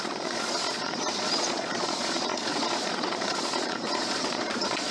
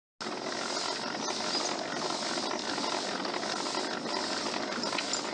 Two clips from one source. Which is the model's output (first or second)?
first